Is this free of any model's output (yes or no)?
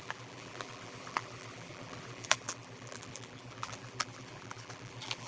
no